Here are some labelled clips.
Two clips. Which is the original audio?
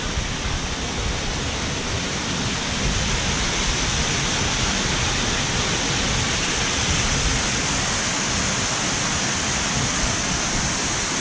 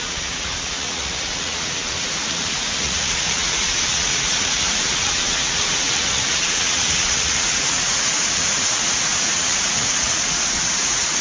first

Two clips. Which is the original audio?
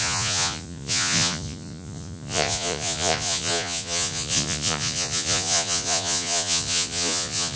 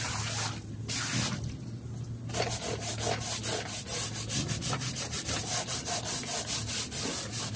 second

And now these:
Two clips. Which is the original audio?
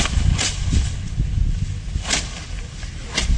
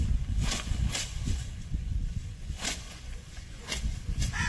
first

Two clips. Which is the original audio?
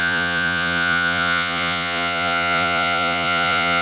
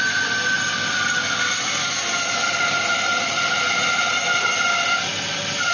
second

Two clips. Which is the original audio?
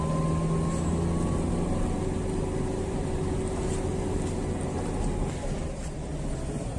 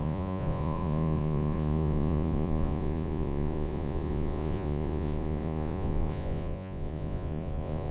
first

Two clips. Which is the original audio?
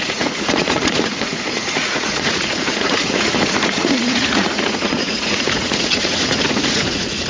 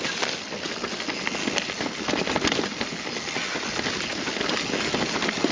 second